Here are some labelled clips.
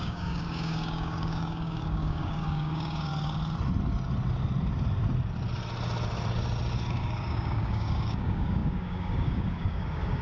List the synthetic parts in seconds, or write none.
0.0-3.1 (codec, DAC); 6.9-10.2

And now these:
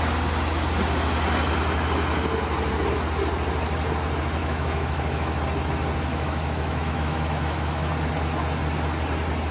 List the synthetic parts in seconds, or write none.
4.4-5.4 (autoencoder, DAC-VAE); 6.1-7.9

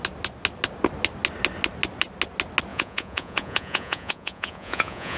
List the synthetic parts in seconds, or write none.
2.7-5.2 (vocoder, Vocos)